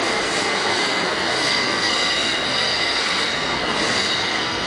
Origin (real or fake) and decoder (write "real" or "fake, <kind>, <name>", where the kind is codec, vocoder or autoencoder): fake, codec, SNAC